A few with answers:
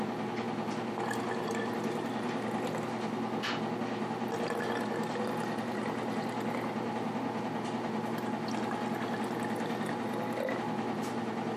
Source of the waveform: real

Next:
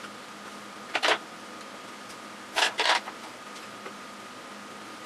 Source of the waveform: real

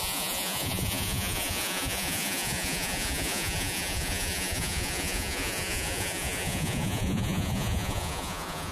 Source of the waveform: fake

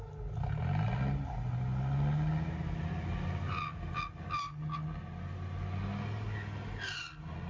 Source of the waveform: real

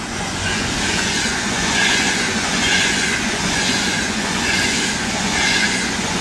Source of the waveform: fake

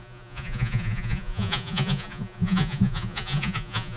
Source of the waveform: fake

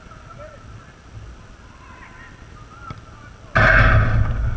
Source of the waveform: real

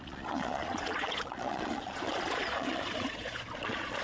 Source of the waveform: fake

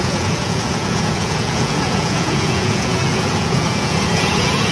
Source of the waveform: fake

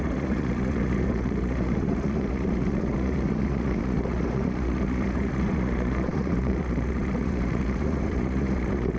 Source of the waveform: fake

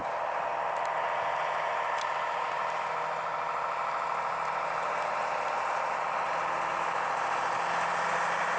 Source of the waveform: real